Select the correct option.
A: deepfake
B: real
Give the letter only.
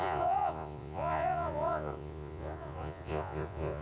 A